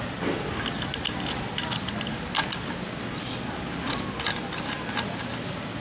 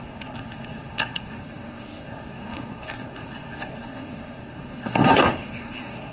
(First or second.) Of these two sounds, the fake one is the second